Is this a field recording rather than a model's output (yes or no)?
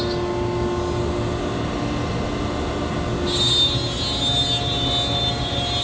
yes